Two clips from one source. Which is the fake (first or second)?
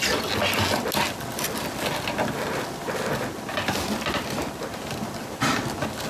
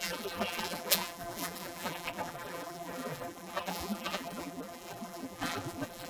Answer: second